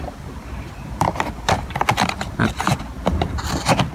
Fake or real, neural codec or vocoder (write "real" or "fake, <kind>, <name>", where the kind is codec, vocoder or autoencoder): fake, vocoder, BigVGAN v2